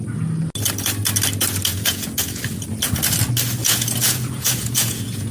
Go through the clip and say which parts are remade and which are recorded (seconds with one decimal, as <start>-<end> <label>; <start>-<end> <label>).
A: 0.0-1.7 recorded; 1.7-2.4 remade; 2.4-3.6 recorded; 3.6-5.3 remade